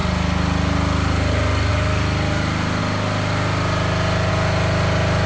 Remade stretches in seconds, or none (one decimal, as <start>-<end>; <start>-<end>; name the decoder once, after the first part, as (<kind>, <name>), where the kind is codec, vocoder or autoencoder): none

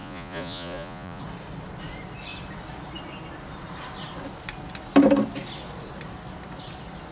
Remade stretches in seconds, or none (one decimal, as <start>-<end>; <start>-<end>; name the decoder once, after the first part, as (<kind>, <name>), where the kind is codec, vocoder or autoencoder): 0.0-1.2 (vocoder, Vocos)